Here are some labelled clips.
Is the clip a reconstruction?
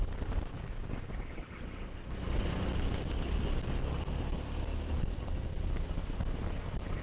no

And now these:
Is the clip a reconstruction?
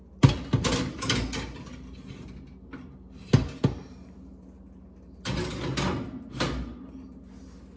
no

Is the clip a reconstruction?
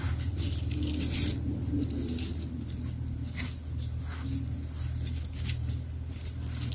no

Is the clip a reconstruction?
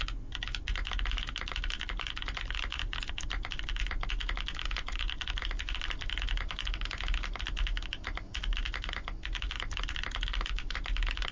no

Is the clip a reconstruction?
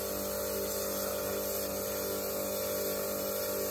no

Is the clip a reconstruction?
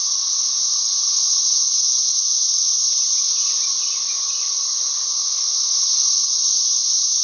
yes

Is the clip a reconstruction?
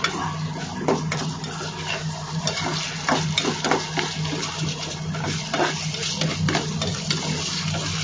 no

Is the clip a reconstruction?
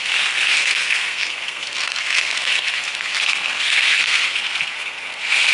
yes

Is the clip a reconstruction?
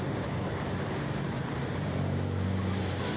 no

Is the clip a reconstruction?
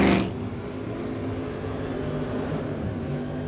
no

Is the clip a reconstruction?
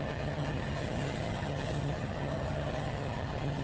yes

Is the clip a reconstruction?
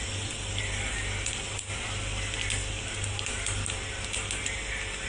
no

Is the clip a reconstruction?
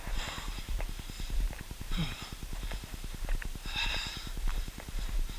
yes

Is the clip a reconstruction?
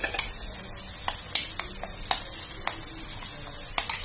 no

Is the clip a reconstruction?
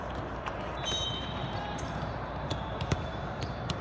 yes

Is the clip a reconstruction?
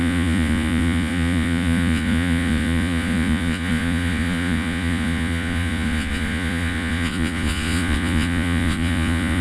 yes